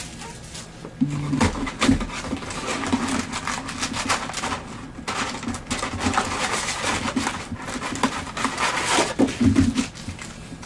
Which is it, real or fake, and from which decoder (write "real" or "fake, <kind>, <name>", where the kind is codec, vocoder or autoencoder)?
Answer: real